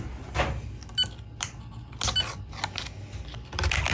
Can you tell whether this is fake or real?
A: real